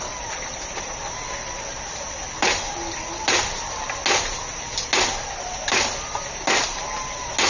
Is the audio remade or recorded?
recorded